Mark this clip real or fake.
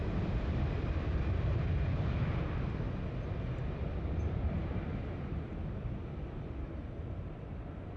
real